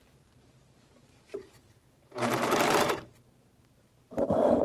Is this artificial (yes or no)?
yes